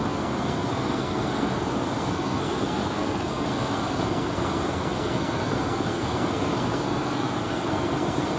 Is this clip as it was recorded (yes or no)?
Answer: no